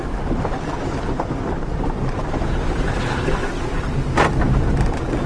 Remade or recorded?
recorded